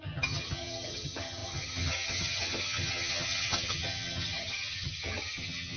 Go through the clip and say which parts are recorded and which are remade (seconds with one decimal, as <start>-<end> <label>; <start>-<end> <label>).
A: 0.0-5.8 remade